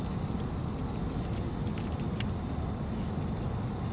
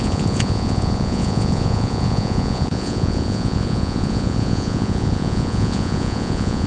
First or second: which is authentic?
first